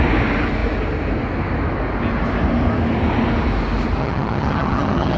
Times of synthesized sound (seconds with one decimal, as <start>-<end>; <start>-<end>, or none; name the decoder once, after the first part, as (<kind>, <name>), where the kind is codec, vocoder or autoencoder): 4.0-5.2 (vocoder, HiFi-GAN)